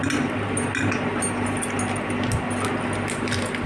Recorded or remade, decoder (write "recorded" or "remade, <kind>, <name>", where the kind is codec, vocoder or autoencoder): recorded